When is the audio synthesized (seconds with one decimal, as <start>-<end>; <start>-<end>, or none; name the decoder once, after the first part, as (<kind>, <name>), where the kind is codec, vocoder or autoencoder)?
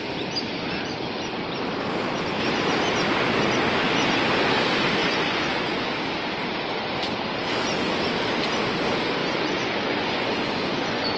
5.0-5.8 (vocoder, Vocos); 9.2-11.2